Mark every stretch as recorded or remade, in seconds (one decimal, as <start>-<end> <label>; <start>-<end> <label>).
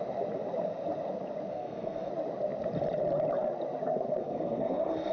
0.0-1.5 recorded; 1.5-2.1 remade; 2.1-4.2 recorded; 4.2-5.1 remade